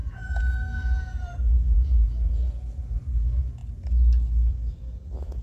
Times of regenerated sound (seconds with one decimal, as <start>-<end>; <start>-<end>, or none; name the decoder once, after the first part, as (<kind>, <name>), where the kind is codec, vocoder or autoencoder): 0.0-3.6 (vocoder, Vocos); 4.5-5.4